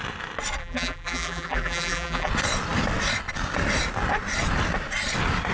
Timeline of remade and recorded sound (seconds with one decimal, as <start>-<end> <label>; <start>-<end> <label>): 0.0-0.6 recorded; 0.6-2.3 remade; 2.3-5.5 recorded